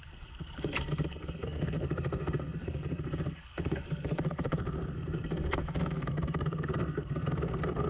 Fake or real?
fake